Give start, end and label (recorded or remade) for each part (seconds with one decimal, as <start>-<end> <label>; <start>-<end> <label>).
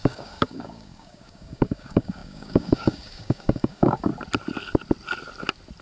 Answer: 0.0-4.1 remade; 4.1-5.8 recorded